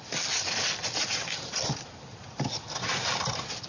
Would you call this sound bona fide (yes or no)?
yes